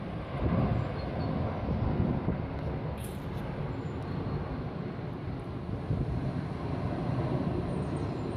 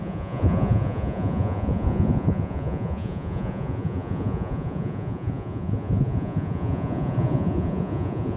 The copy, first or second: second